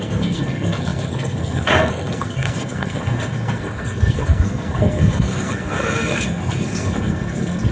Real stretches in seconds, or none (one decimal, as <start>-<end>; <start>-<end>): none